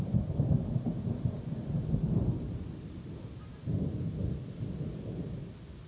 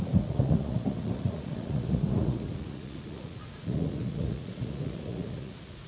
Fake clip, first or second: second